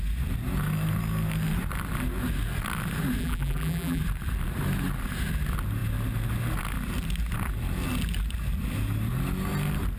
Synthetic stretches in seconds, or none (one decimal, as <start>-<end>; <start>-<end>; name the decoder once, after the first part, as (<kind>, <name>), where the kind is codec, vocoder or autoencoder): 3.2-4.0 (vocoder, BigVGAN v2)